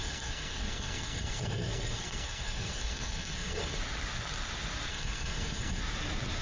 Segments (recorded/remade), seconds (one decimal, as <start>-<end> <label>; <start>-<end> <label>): 0.0-3.8 remade; 3.8-4.9 recorded; 4.9-5.8 remade; 5.8-6.4 recorded